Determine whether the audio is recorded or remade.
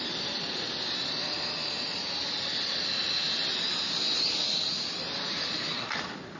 recorded